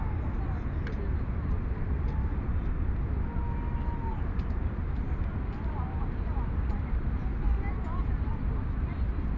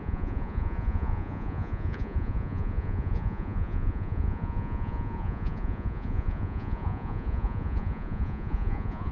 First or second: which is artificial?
second